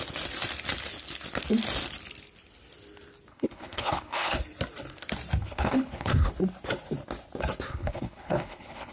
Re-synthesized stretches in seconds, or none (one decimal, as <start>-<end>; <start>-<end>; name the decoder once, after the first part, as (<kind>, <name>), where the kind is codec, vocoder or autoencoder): 3.3-4.4 (codec, HILCodec); 5.4-6.3; 7.7-8.9